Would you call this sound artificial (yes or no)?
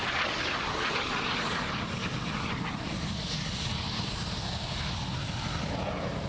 no